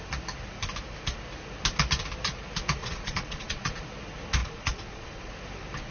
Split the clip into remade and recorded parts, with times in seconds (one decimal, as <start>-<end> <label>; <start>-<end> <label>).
0.0-2.8 recorded; 2.8-3.8 remade; 3.8-4.4 recorded; 4.4-5.3 remade; 5.3-5.9 recorded